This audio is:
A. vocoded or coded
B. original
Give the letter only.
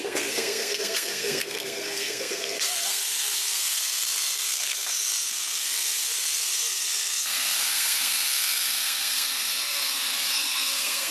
A